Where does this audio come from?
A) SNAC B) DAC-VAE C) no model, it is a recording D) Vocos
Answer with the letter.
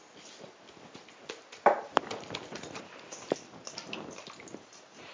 C